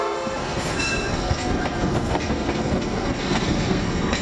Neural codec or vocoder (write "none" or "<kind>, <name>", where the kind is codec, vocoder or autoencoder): codec, SNAC